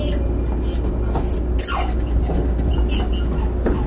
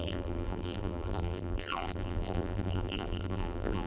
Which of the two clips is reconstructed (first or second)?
second